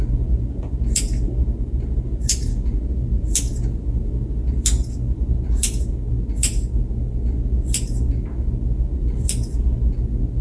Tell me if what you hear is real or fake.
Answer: real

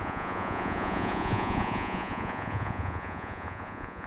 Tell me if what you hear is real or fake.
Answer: fake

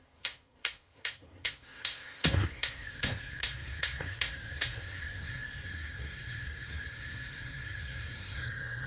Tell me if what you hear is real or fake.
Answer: fake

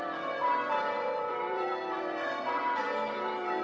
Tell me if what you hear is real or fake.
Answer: fake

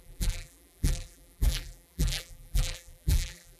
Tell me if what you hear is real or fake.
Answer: fake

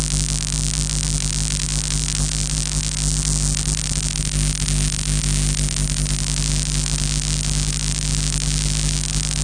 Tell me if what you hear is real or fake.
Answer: real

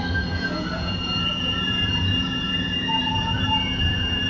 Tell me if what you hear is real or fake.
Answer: fake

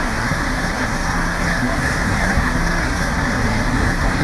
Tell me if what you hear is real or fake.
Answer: fake